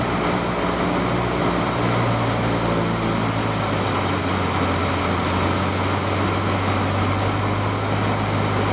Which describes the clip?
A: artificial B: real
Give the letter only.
B